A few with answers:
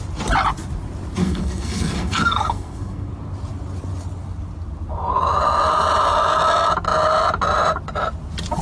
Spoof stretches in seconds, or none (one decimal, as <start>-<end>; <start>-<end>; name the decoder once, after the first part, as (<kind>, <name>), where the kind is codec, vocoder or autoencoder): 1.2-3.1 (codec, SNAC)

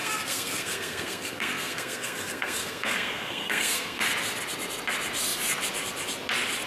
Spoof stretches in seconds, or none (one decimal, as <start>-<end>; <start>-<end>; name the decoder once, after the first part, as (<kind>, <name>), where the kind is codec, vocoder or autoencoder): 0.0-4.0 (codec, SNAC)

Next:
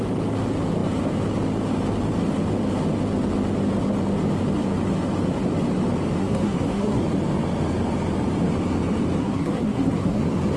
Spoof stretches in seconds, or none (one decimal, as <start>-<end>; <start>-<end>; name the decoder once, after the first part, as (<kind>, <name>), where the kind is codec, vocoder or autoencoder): 6.2-7.0 (codec, SNAC); 9.2-10.2

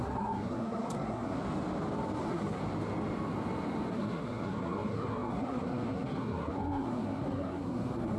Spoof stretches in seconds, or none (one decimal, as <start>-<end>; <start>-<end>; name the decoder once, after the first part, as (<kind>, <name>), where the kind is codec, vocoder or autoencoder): 0.0-1.4 (codec, SNAC); 2.2-2.6; 3.9-8.2

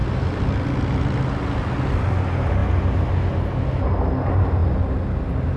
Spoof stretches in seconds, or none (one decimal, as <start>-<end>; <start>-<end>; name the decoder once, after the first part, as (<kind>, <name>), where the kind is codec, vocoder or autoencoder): none

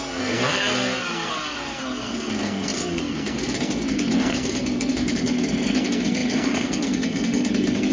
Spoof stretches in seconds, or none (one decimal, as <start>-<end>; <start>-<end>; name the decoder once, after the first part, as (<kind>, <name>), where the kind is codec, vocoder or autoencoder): 0.0-7.9 (codec, SNAC)